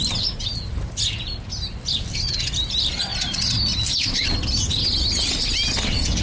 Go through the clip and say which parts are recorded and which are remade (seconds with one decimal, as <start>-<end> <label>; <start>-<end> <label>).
0.0-6.2 recorded